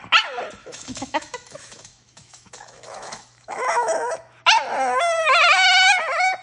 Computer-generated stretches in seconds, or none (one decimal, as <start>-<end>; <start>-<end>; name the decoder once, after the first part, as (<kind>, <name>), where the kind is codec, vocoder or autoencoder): 0.6-4.4 (autoencoder, DAC-VAE)